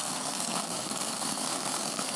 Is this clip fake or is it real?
fake